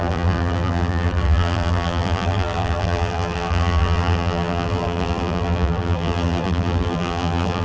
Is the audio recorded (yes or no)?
no